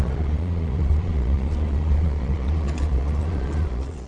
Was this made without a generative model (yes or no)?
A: no